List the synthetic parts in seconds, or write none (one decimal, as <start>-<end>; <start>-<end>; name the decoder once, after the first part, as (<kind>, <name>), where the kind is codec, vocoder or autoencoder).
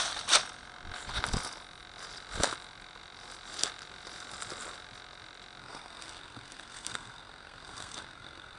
5.6-8.6 (codec, SNAC)